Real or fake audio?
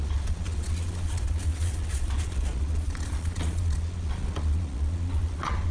fake